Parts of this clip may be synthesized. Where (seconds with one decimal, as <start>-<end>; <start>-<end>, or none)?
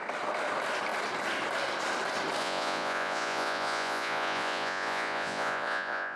2.4-6.2